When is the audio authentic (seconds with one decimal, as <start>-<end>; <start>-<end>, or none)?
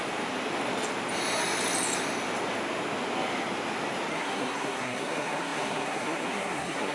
0.0-4.1